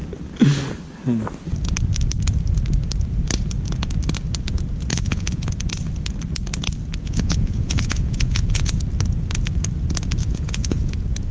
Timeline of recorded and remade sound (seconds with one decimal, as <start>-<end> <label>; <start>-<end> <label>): 0.0-4.9 recorded; 4.9-5.5 remade; 5.5-7.0 recorded; 7.0-8.8 remade; 8.8-10.2 recorded; 10.2-10.9 remade; 10.9-11.3 recorded